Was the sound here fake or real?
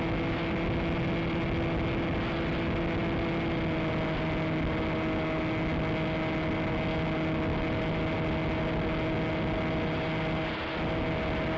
real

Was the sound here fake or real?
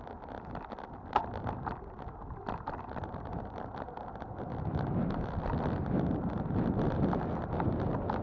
real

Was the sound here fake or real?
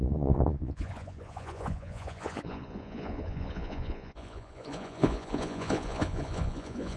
fake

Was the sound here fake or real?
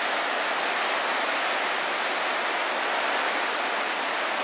real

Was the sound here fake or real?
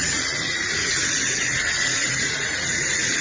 fake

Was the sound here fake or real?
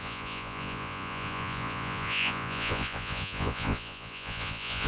fake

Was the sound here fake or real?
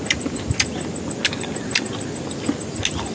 real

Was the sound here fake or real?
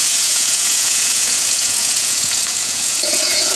fake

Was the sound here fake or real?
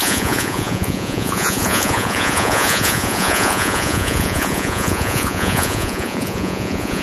fake